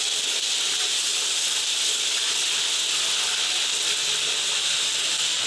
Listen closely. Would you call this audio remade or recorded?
recorded